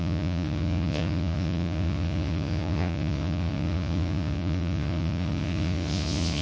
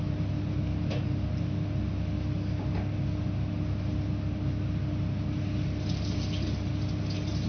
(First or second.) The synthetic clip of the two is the first